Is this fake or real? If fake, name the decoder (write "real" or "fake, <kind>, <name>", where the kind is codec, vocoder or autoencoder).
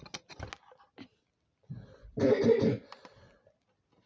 real